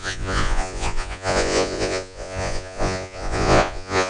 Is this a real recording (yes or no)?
no